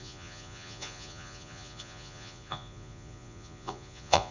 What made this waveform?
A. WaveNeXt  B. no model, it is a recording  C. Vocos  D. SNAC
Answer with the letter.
C